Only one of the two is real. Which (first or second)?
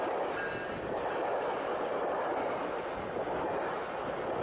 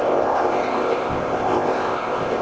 first